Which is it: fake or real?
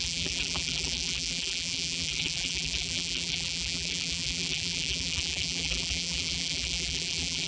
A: fake